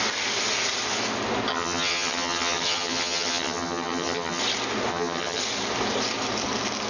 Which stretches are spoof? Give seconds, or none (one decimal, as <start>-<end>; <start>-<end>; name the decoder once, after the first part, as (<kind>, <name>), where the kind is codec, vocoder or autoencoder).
1.5-4.4 (vocoder, HiFi-GAN); 4.9-5.4

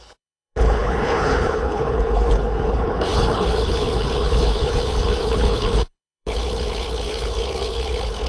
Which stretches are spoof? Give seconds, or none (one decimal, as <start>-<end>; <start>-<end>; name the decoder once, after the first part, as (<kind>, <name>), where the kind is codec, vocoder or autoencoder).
0.0-8.3 (codec, HILCodec)

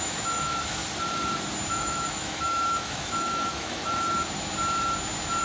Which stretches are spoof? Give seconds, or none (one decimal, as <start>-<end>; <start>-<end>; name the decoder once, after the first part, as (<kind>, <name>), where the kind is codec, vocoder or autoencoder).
0.0-0.8 (autoencoder, DAC-VAE); 1.7-3.8

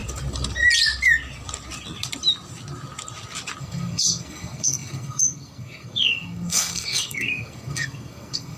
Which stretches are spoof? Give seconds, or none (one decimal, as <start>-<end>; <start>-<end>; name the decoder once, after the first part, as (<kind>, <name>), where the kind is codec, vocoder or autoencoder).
3.6-8.6 (codec, SNAC)

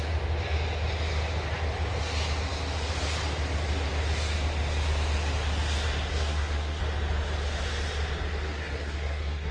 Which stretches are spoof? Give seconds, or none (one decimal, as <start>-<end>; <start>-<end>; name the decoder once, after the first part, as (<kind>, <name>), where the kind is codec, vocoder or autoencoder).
6.1-6.8 (codec, SNAC); 8.5-9.5

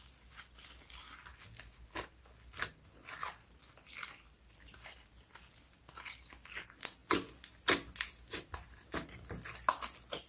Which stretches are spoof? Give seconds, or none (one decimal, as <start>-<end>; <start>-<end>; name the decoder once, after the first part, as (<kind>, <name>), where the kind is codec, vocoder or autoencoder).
none

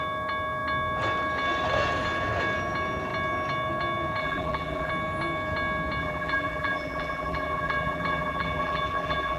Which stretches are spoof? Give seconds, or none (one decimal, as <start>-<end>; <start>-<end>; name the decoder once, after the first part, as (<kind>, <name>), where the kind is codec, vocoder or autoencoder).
4.2-4.9 (vocoder, BigVGAN v2); 6.0-9.4

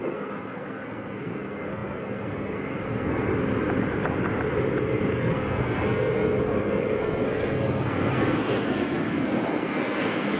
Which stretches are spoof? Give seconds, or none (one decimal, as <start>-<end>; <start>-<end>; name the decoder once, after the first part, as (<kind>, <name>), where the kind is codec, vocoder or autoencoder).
0.0-3.3 (codec, SNAC); 5.1-10.4